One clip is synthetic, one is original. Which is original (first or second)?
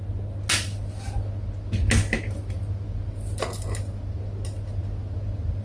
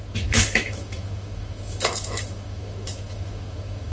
first